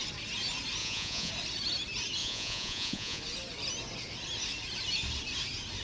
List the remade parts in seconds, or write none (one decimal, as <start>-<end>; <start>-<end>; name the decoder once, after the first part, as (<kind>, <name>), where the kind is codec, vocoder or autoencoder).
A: 0.8-1.3 (vocoder, Vocos); 2.2-3.2